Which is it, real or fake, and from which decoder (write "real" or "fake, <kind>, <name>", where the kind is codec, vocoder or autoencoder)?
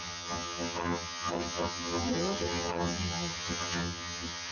fake, vocoder, HiFi-GAN